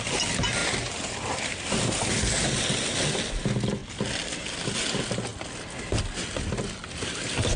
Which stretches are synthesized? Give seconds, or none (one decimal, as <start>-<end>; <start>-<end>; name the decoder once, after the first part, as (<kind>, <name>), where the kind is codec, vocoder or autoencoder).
0.6-1.7 (vocoder, BigVGAN v2)